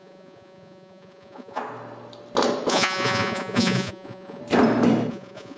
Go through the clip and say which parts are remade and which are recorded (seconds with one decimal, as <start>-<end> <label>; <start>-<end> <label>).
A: 0.0-1.6 remade; 1.6-2.7 recorded; 2.7-4.4 remade; 4.4-5.1 recorded; 5.1-5.6 remade